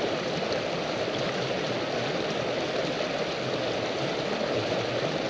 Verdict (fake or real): real